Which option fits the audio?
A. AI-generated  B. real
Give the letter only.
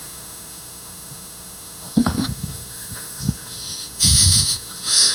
A